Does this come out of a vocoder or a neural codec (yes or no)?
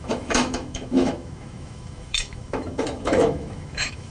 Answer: yes